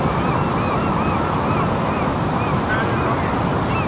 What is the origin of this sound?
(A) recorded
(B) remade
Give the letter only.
A